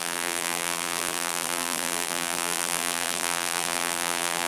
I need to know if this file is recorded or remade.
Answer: remade